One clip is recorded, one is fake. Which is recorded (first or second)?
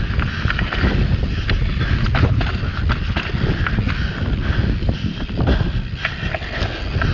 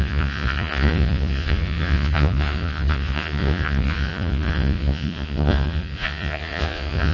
first